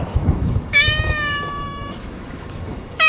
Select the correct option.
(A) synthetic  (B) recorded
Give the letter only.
A